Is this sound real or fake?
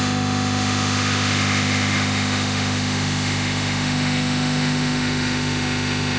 fake